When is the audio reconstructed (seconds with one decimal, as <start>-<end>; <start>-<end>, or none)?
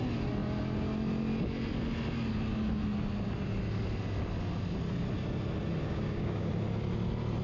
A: 5.8-6.5